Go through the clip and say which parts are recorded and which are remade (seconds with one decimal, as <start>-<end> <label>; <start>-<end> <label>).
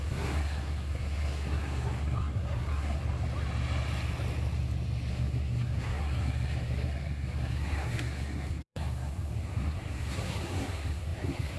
0.0-3.0 remade; 3.0-5.1 recorded; 5.1-11.6 remade